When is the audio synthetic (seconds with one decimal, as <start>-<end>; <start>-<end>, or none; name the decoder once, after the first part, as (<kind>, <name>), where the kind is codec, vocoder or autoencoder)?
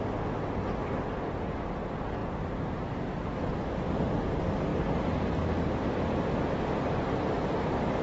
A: 2.2-2.8 (vocoder, BigVGAN v2); 4.7-5.4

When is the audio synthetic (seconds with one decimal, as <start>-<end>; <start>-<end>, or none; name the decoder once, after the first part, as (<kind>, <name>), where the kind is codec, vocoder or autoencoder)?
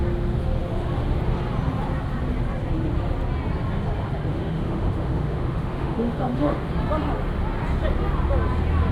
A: 4.3-6.7 (autoencoder, DAC-VAE)